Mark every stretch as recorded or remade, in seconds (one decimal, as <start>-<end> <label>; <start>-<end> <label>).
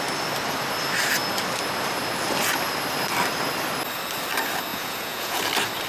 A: 0.0-4.7 recorded; 4.7-5.4 remade; 5.4-5.9 recorded